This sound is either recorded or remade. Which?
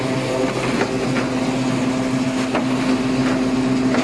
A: recorded